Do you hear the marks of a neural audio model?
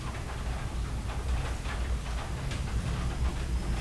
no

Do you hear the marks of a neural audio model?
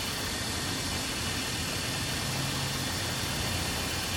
no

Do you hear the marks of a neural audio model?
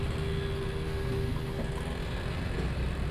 no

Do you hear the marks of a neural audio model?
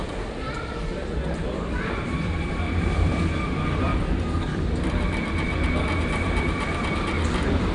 yes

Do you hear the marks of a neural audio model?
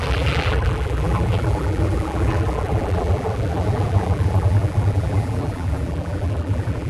yes